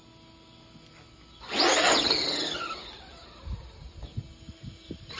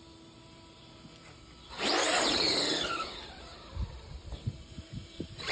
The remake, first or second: second